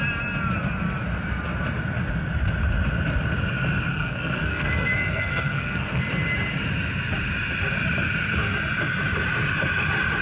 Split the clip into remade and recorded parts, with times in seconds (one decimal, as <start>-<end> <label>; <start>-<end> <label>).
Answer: 0.0-3.9 recorded; 3.9-6.0 remade; 6.0-10.2 recorded